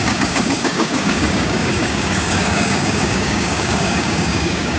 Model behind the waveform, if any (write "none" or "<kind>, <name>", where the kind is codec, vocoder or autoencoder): codec, DAC